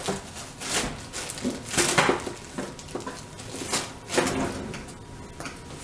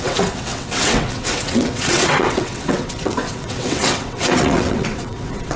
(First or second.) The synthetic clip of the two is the second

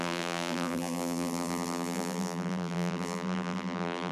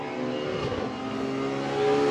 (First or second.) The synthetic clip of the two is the first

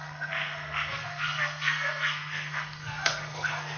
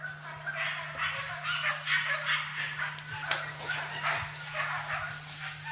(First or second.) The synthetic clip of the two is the first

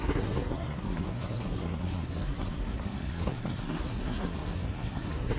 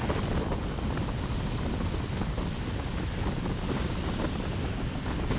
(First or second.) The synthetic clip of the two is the first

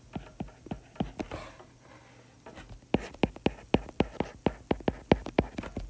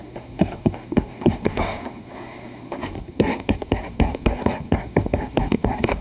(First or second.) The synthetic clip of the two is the second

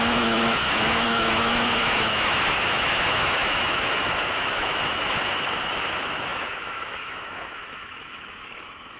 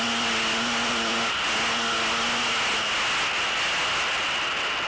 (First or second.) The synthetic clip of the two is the first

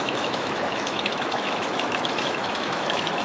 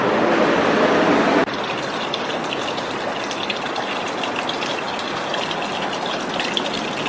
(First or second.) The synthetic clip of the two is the first